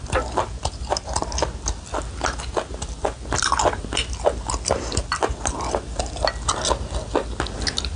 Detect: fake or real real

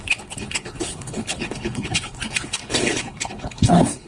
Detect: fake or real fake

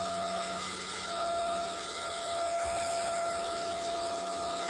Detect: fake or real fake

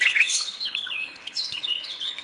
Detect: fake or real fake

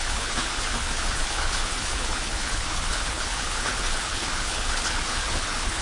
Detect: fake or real fake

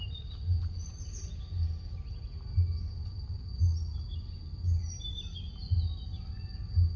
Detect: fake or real real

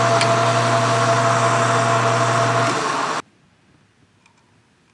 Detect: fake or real real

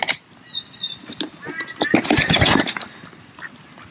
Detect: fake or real real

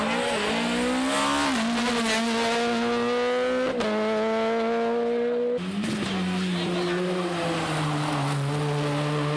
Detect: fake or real real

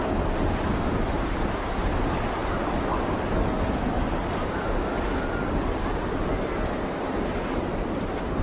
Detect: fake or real real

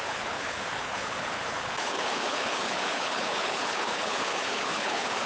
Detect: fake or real fake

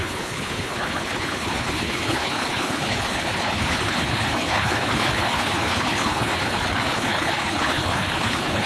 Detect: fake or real fake